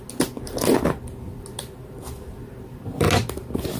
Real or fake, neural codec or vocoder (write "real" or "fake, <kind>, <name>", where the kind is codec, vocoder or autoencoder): real